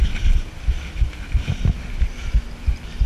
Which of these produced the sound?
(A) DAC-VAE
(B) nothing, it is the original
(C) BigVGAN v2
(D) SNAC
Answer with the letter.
B